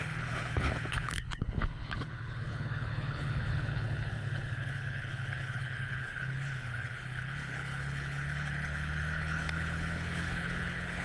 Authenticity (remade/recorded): remade